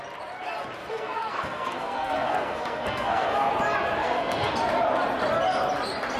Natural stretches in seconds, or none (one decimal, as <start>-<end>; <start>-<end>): 0.0-0.8; 3.5-4.0; 4.5-6.2